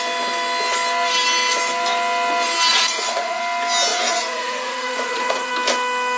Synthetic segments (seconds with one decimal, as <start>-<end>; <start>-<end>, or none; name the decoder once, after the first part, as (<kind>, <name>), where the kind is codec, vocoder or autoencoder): 2.7-3.4 (vocoder, Vocos); 3.9-5.5